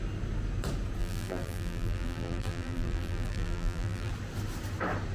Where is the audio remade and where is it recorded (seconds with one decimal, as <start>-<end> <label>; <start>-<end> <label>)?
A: 0.0-1.0 recorded; 1.0-4.1 remade; 4.1-5.1 recorded